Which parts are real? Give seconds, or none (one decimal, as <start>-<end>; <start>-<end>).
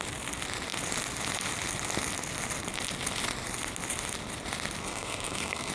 0.0-4.8